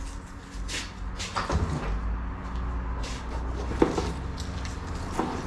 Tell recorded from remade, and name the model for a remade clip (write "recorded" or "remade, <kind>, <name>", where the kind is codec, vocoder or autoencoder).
recorded